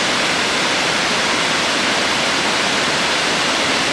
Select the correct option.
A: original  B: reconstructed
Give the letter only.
B